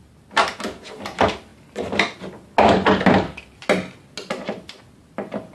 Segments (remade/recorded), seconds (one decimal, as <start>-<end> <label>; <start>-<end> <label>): 0.0-5.5 recorded